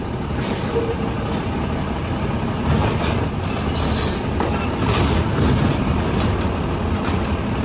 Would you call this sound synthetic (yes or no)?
no